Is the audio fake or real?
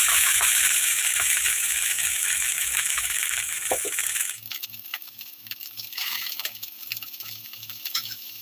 fake